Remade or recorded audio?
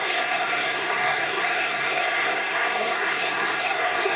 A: remade